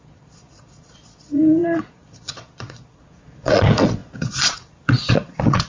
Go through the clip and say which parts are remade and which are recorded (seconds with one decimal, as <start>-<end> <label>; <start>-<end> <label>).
0.0-5.7 remade